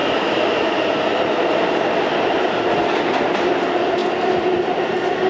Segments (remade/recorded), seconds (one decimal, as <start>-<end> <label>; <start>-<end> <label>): 0.0-3.2 remade; 3.2-5.3 recorded